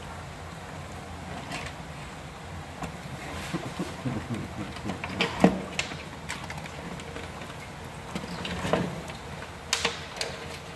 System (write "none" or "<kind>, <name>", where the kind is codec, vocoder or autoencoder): none